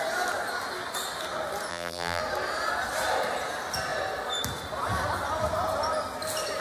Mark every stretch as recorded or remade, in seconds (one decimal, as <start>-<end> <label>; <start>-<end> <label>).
0.0-1.7 recorded; 1.7-2.2 remade; 2.2-6.6 recorded